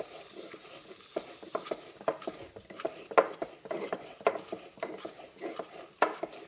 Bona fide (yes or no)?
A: yes